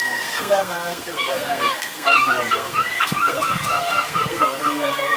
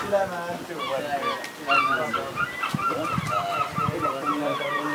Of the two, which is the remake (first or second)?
first